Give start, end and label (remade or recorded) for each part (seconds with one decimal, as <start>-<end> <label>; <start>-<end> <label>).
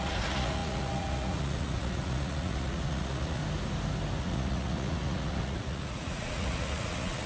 0.0-3.4 remade; 3.4-4.2 recorded; 4.2-7.3 remade